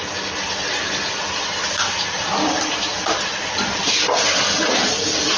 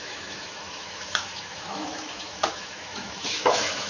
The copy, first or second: second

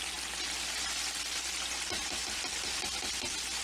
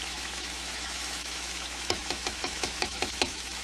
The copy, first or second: second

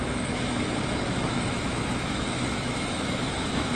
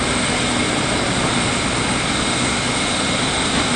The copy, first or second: first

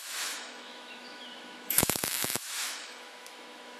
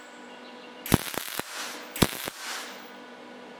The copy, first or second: first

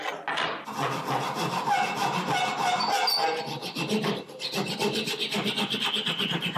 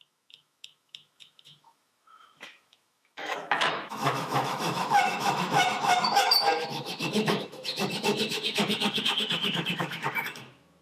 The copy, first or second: second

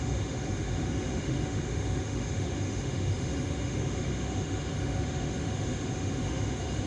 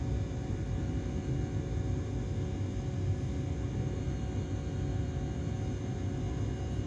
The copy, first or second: first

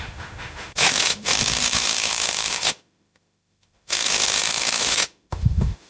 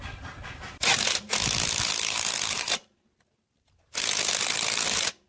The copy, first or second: first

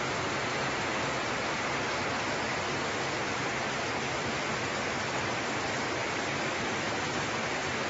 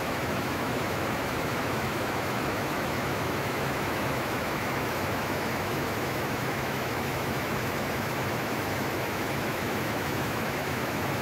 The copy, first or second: second